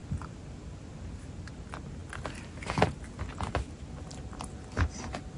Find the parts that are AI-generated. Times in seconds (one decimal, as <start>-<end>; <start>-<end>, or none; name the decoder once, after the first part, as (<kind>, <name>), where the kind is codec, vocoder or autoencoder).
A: none